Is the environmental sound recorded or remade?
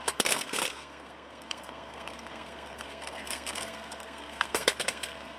remade